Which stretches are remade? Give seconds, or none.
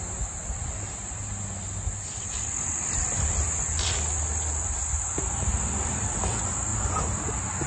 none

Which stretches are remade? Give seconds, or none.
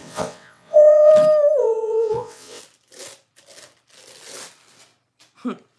0.0-1.1 (vocoder, WaveNeXt); 1.6-2.6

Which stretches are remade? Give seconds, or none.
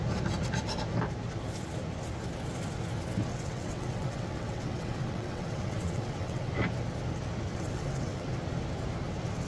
3.3-6.5 (vocoder, WaveNeXt); 7.5-8.3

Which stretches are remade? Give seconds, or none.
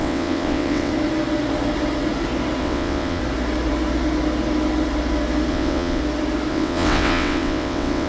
0.0-0.9 (vocoder, WaveNeXt); 2.6-3.2; 5.5-6.0; 6.5-8.1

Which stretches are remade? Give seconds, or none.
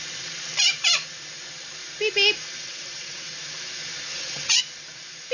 2.6-3.3 (vocoder, WaveNeXt); 4.1-4.6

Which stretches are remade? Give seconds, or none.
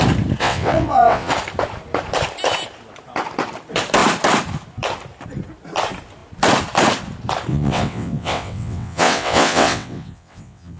0.4-1.3 (vocoder, WaveNeXt); 7.5-10.8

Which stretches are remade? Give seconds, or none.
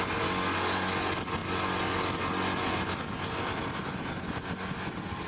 none